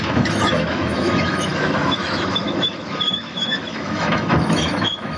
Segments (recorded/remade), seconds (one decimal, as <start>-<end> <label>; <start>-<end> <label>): 0.0-5.2 remade